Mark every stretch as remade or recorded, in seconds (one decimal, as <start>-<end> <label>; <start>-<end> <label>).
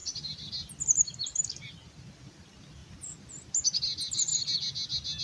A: 0.0-0.5 remade; 0.5-5.2 recorded